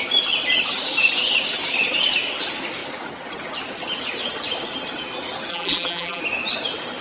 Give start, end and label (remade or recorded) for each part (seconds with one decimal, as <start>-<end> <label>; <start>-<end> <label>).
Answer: 0.0-5.5 recorded; 5.5-6.2 remade; 6.2-7.0 recorded